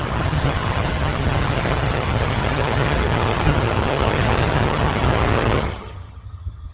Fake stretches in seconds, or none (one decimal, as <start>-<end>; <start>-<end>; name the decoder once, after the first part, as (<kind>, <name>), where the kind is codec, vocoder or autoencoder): 0.0-6.7 (vocoder, HiFi-GAN)

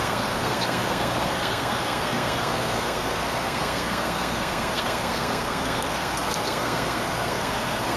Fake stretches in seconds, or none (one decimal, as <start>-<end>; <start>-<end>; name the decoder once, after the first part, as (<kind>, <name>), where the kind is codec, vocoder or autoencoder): 0.0-8.0 (codec, SNAC)